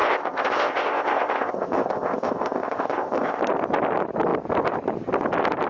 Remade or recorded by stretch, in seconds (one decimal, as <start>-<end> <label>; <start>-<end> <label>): 0.0-3.4 remade; 3.4-5.7 recorded

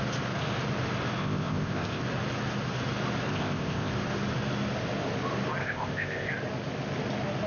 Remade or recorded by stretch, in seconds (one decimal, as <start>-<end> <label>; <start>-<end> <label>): 0.0-1.2 recorded; 1.2-2.0 remade; 2.0-3.3 recorded; 3.3-3.9 remade; 3.9-5.6 recorded; 5.6-6.3 remade; 6.3-7.5 recorded

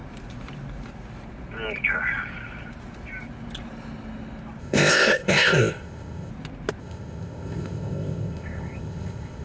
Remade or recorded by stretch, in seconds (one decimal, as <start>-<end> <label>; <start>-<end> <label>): 0.0-4.6 recorded; 4.6-6.3 remade; 6.3-6.8 recorded; 6.8-9.4 remade

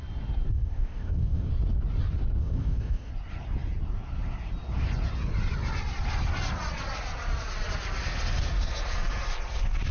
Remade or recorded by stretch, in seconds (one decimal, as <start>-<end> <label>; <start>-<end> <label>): 0.0-0.5 recorded; 0.5-1.5 remade; 1.5-2.4 recorded; 2.4-3.1 remade; 3.1-9.9 recorded

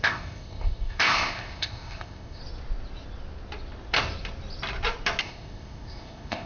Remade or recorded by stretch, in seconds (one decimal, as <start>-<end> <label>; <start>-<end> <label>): 0.0-2.4 remade; 2.4-5.2 recorded; 5.2-6.5 remade

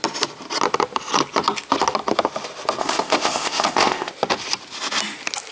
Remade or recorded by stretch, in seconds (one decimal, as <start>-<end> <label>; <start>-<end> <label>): 0.0-2.8 recorded; 2.8-4.1 remade; 4.1-5.5 recorded

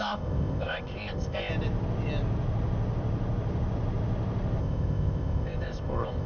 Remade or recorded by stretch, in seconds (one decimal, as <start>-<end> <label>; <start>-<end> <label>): 0.0-1.5 remade; 1.5-4.6 recorded; 4.6-6.3 remade